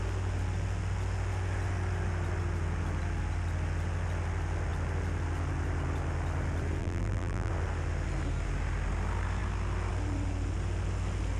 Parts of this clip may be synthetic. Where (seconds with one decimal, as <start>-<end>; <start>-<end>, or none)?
6.8-7.5